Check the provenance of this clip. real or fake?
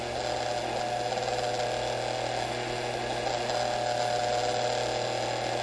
real